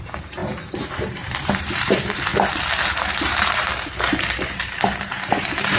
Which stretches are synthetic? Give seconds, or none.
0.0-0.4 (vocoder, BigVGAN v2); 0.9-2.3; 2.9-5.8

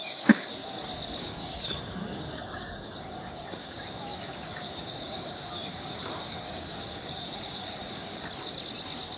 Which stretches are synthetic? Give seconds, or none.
0.0-0.6 (codec, DAC); 1.2-8.2

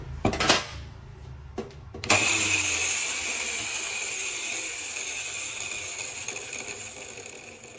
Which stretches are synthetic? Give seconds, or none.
none

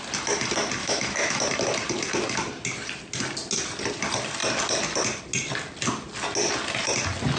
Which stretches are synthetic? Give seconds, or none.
0.8-1.4 (autoencoder, DAC-VAE)

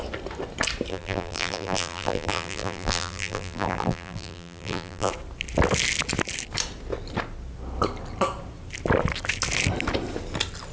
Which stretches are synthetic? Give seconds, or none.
0.9-5.1 (vocoder, BigVGAN v2)

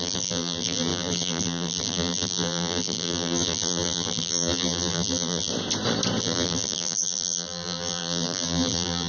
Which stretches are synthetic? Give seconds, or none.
0.0-5.5 (vocoder, BigVGAN v2); 6.2-9.1

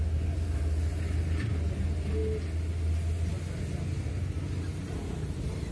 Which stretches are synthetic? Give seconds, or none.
none